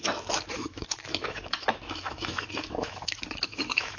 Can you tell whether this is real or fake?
fake